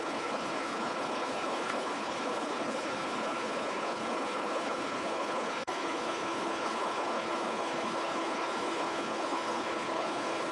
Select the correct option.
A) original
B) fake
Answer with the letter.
B